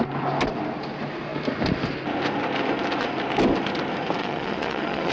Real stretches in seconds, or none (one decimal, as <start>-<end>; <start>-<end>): 0.0-4.2